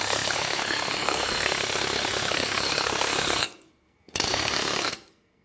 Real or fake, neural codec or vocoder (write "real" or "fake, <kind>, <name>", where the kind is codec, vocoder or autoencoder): fake, codec, SNAC